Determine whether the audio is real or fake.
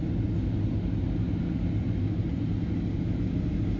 real